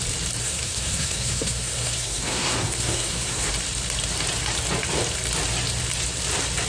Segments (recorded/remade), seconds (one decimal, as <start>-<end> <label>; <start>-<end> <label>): 0.0-0.4 recorded; 0.4-3.5 remade; 3.5-6.7 recorded